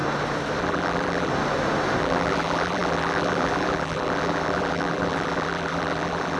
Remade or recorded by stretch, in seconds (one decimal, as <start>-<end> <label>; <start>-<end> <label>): 0.0-0.6 recorded; 0.6-1.3 remade; 1.3-2.0 recorded; 2.0-6.4 remade